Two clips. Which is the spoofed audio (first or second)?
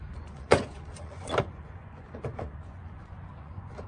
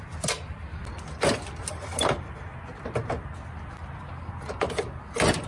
first